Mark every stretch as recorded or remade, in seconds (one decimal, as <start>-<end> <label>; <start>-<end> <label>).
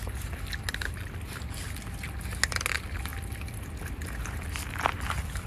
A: 0.0-5.5 recorded